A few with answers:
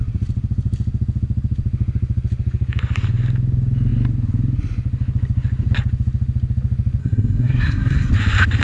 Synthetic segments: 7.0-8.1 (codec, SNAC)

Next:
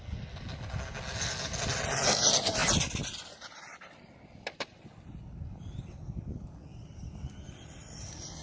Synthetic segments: none

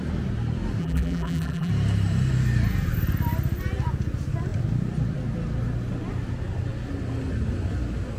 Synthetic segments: 0.8-1.7 (vocoder, BigVGAN v2)

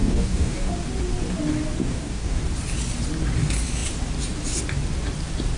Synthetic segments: 0.0-0.7 (codec, DAC); 1.8-2.4

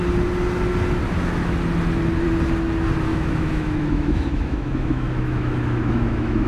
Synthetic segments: 3.1-6.5 (autoencoder, DAC-VAE)